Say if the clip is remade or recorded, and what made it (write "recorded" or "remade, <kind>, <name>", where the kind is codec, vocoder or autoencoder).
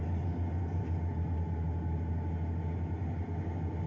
recorded